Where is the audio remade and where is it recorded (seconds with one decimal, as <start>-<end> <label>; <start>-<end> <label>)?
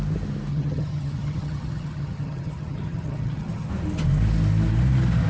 0.0-0.5 recorded; 0.5-3.7 remade; 3.7-5.3 recorded